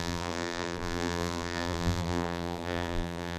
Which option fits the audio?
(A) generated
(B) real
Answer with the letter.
A